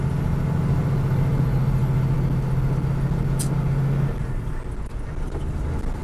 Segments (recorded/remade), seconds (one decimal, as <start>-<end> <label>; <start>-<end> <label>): 0.0-6.0 recorded